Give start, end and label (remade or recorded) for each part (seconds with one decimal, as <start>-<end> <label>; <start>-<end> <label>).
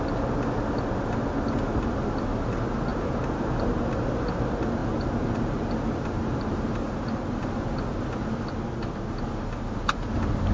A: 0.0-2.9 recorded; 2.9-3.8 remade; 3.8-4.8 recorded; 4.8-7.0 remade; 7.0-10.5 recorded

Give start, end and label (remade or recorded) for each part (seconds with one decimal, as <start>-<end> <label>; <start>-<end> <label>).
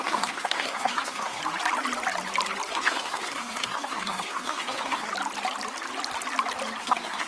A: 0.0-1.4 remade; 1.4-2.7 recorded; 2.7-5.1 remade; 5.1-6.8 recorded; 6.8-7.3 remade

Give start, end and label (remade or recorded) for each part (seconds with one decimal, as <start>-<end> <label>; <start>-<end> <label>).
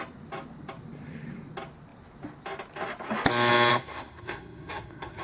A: 0.0-3.7 recorded; 3.7-5.2 remade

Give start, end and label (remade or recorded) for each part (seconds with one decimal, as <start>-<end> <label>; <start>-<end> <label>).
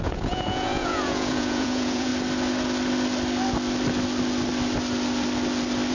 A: 0.0-2.1 remade; 2.1-5.9 recorded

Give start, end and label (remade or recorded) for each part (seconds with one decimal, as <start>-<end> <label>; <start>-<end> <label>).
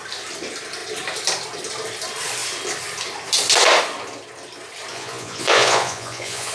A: 0.0-4.9 recorded; 4.9-6.5 remade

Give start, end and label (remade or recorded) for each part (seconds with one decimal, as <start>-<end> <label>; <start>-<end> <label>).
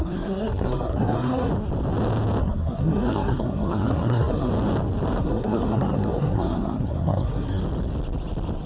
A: 0.0-1.5 remade; 1.5-2.4 recorded; 2.4-4.5 remade; 4.5-5.2 recorded; 5.2-7.6 remade; 7.6-8.7 recorded